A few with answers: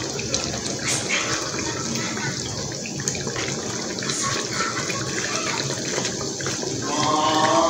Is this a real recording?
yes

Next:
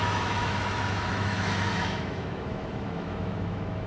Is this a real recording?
no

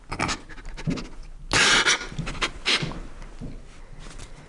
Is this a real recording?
yes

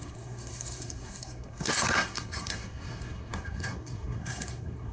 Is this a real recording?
no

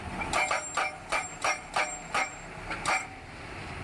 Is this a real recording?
yes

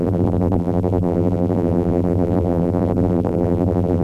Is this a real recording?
no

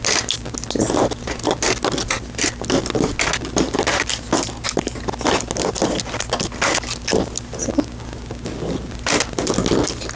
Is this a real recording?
yes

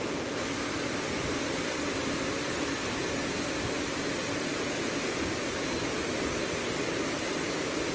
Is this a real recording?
yes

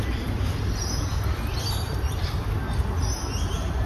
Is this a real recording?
yes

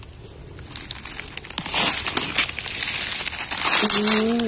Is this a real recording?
yes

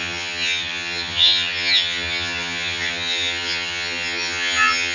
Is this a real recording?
no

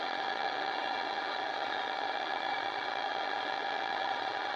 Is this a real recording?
no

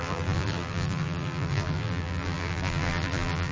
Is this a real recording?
no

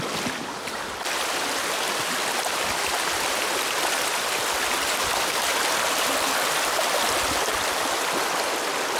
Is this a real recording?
no